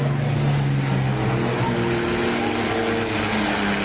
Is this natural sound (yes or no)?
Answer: yes